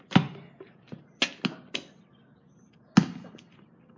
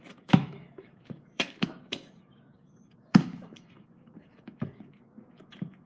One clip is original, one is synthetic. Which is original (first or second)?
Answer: first